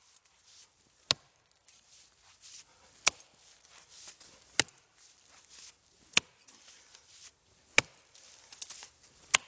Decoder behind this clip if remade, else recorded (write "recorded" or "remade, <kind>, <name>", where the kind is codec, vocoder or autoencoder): recorded